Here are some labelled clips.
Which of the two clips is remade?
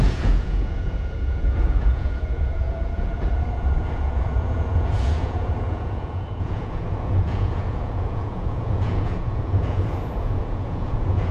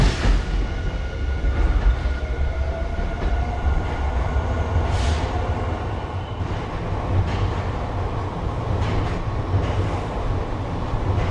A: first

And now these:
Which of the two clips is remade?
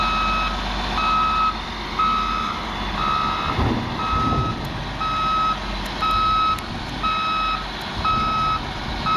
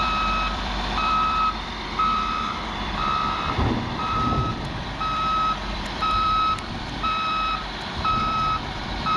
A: second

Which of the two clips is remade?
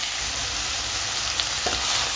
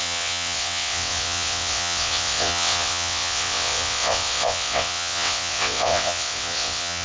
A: second